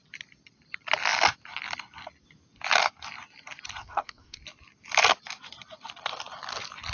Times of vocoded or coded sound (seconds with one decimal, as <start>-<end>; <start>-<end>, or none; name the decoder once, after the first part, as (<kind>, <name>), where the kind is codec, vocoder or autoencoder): 3.8-4.4 (codec, SNAC)